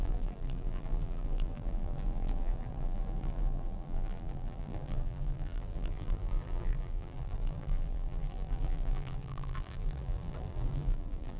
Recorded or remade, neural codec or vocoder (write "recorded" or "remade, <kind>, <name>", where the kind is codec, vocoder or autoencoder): remade, vocoder, BigVGAN v2